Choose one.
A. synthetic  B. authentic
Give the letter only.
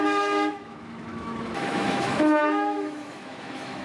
A